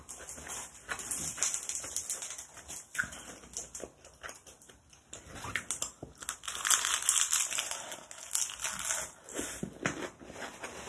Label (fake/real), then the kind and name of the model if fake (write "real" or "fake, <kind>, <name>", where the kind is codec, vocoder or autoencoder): real